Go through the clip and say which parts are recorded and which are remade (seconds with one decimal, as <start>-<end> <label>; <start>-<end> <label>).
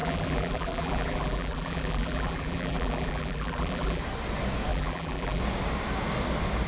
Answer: 0.0-4.0 remade; 4.0-4.7 recorded; 4.7-5.4 remade; 5.4-6.7 recorded